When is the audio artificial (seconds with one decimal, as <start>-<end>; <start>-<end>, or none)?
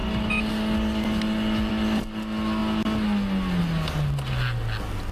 none